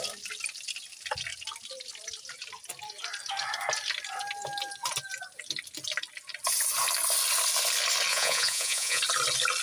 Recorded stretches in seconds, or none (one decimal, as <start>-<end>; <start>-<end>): 0.0-8.1; 9.0-9.6